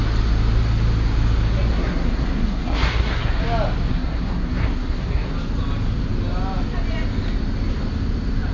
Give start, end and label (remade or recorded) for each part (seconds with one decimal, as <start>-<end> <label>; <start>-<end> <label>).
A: 0.0-1.7 recorded; 1.7-3.4 remade; 3.4-3.9 recorded; 3.9-5.3 remade; 5.3-8.5 recorded